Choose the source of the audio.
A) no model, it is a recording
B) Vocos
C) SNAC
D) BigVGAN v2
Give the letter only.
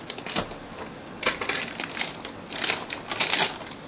A